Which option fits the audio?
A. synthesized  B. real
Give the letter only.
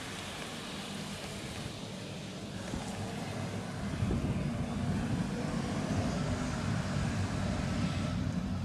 B